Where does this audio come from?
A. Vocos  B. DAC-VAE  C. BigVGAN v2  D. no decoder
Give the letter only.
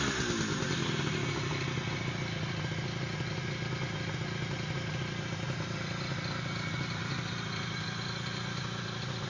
D